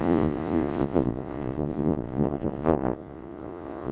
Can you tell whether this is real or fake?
fake